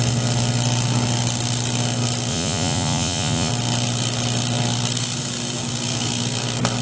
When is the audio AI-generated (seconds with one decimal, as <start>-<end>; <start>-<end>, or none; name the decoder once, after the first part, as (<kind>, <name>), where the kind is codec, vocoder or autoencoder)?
2.3-3.5 (vocoder, Vocos)